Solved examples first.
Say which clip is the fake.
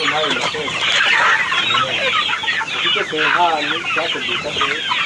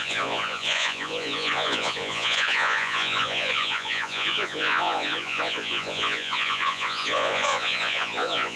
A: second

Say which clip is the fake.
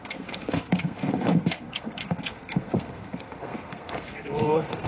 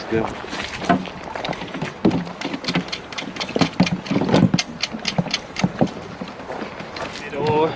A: first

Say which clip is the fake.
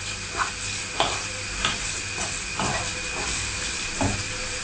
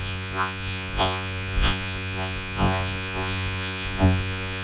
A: second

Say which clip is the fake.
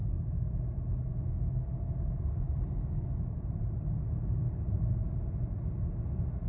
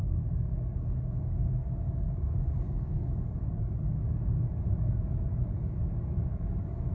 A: second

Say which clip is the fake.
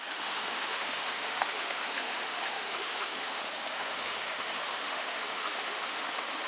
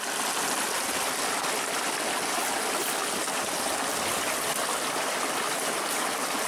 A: first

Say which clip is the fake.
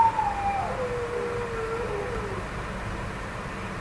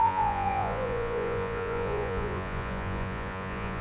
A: second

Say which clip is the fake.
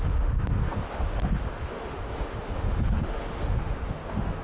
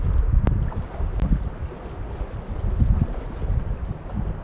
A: first